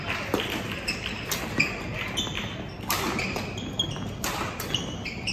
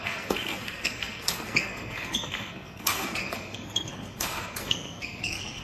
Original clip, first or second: first